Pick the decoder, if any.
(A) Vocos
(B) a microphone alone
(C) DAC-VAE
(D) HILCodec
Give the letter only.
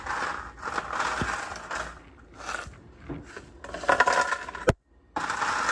B